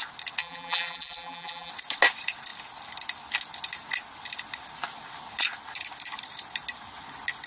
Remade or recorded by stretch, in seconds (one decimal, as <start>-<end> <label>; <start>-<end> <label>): 0.0-0.4 recorded; 0.4-1.7 remade; 1.7-7.5 recorded